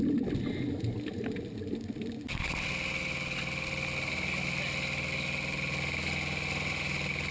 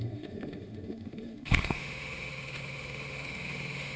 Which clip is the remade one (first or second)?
second